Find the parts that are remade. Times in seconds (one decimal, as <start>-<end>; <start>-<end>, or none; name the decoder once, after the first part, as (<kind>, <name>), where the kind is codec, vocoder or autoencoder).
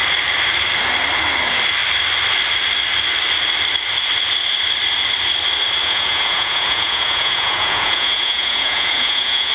5.8-9.5 (vocoder, Vocos)